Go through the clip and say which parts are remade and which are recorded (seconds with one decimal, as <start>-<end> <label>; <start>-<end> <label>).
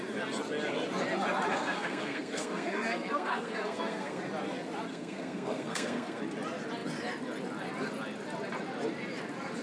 0.0-1.5 recorded; 1.5-4.2 remade; 4.2-4.9 recorded; 4.9-6.2 remade; 6.2-9.6 recorded